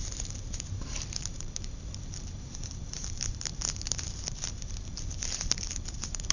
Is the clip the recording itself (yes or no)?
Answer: no